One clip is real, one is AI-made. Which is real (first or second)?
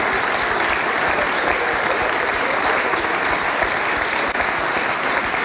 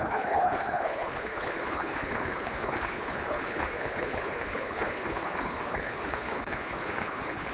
first